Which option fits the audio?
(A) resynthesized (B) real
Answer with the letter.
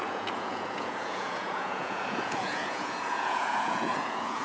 A